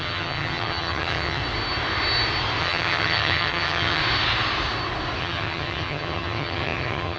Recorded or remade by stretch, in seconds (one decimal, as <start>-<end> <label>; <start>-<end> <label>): 0.0-1.4 remade; 1.4-2.6 recorded; 2.6-4.0 remade; 4.0-5.2 recorded; 5.2-7.2 remade